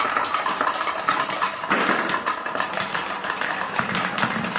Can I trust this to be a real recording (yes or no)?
no